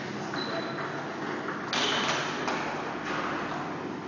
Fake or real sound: real